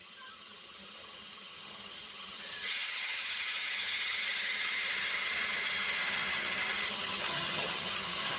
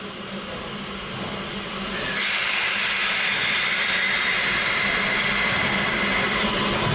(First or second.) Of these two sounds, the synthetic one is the first